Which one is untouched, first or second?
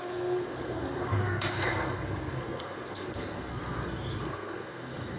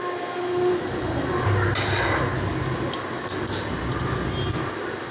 second